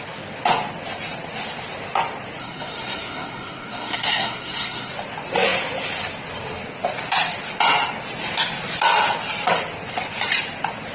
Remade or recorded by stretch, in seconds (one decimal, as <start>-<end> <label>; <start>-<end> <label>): 0.0-2.4 recorded; 2.4-4.9 remade; 4.9-10.9 recorded